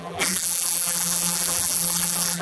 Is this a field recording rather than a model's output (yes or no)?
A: no